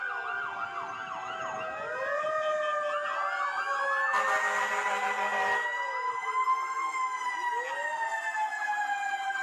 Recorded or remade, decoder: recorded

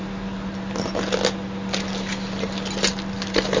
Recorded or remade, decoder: recorded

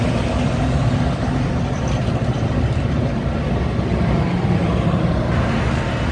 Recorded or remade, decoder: recorded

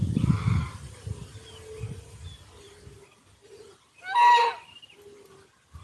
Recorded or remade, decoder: recorded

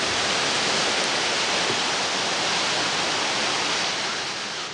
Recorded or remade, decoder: recorded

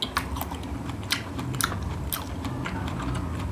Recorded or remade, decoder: recorded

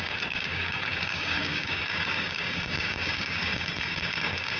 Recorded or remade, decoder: remade, codec, DAC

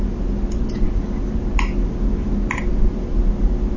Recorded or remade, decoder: recorded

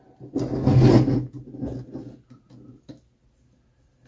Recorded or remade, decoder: recorded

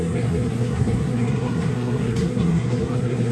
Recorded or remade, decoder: remade, codec, SNAC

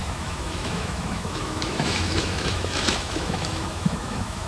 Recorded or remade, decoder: remade, autoencoder, DAC-VAE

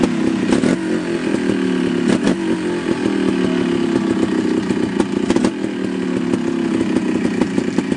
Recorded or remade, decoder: recorded